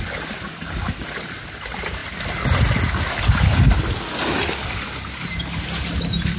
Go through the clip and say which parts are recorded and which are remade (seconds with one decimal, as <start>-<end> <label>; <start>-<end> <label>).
0.0-6.4 recorded